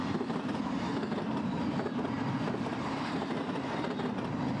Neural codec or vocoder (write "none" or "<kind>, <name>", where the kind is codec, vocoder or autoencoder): vocoder, BigVGAN v2